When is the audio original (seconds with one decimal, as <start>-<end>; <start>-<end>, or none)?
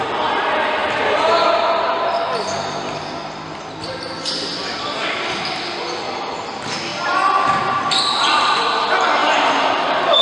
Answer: 0.8-6.0; 6.9-8.2; 9.2-9.7